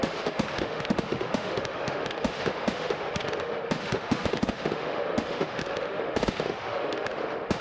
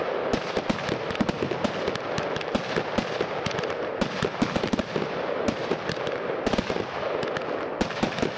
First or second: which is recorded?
second